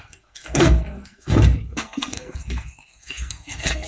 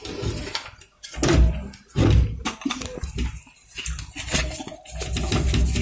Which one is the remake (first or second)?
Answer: first